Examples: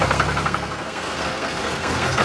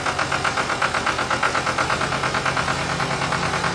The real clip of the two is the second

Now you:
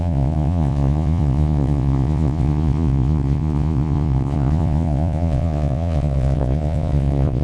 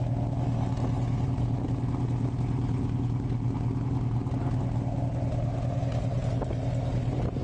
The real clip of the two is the second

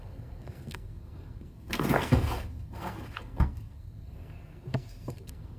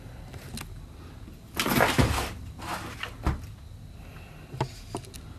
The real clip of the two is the second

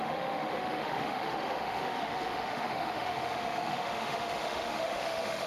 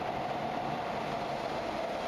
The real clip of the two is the second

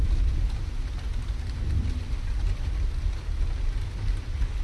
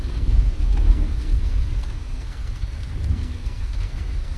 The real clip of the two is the first